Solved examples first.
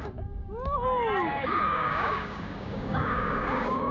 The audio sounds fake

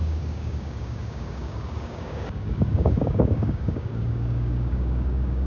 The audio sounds fake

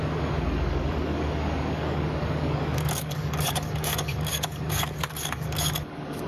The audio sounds fake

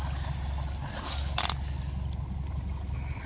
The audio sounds real